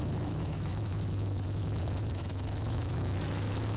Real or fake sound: fake